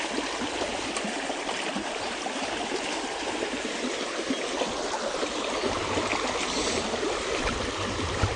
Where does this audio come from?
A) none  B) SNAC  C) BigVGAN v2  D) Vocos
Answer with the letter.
A